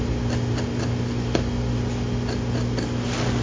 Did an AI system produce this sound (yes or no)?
no